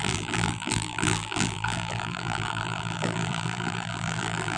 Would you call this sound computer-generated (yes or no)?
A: yes